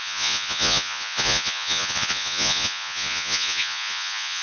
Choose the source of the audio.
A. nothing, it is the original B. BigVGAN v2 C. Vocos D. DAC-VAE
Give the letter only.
C